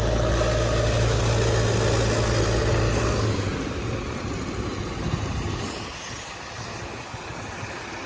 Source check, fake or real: real